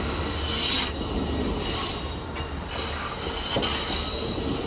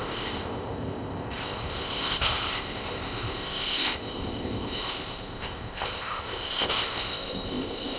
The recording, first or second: first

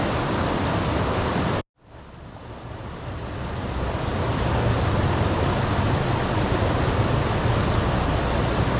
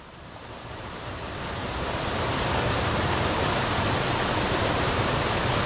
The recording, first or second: first